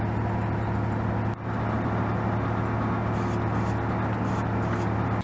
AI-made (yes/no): no